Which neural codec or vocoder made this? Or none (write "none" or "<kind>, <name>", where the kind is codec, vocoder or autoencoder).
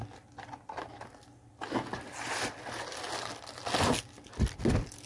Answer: none